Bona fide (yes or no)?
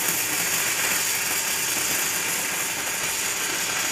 yes